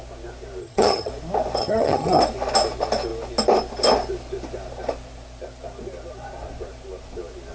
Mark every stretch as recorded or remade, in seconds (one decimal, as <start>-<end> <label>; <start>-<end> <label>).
0.0-0.6 recorded; 0.6-1.1 remade; 1.1-1.6 recorded; 1.6-2.2 remade; 2.2-7.5 recorded